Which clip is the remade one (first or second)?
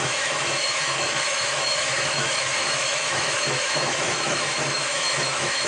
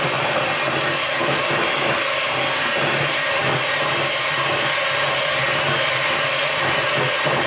first